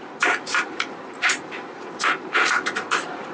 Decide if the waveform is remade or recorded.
remade